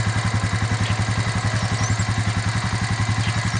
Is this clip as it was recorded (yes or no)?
yes